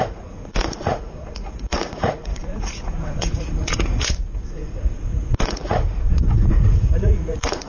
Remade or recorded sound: remade